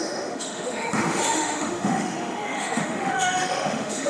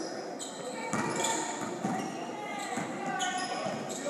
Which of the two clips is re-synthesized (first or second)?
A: first